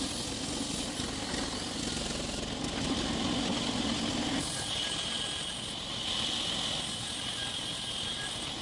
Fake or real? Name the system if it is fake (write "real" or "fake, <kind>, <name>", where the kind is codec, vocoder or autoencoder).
real